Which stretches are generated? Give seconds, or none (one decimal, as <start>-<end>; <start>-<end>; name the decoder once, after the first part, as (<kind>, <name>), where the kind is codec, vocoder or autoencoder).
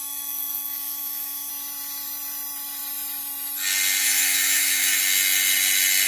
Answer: 0.0-1.5 (autoencoder, DAC-VAE); 4.0-5.0